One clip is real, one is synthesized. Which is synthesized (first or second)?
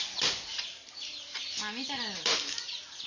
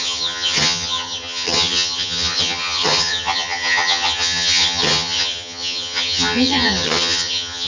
second